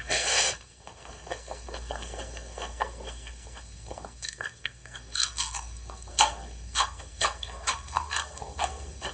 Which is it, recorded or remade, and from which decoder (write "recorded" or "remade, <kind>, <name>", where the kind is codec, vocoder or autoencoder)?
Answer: remade, codec, SNAC